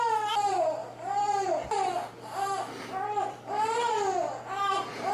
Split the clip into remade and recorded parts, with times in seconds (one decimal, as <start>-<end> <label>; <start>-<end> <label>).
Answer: 0.0-0.8 recorded; 0.8-3.9 remade; 3.9-5.1 recorded